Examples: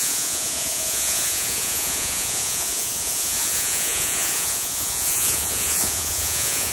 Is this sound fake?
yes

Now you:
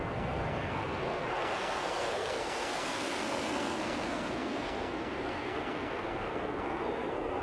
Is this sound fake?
yes